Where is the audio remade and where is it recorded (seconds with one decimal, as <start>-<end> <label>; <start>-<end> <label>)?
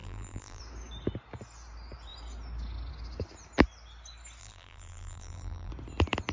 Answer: 0.0-0.6 remade; 0.6-4.4 recorded; 4.4-5.7 remade; 5.7-6.3 recorded